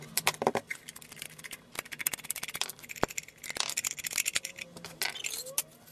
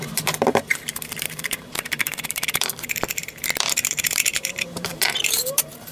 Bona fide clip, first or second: first